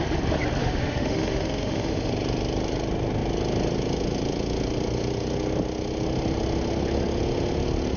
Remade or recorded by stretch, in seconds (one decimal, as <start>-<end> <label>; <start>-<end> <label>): 0.0-0.6 recorded; 0.6-2.1 remade; 2.1-8.0 recorded